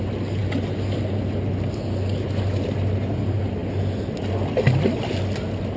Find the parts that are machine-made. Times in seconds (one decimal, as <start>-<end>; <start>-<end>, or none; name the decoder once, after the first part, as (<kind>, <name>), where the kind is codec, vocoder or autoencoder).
none